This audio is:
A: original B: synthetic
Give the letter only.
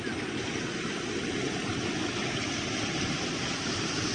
A